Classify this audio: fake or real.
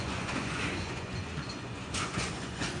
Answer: fake